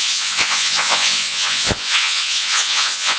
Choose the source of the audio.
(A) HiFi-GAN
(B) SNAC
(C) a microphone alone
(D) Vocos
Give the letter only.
D